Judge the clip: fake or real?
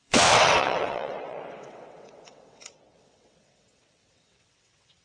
fake